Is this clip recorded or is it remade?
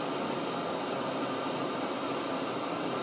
recorded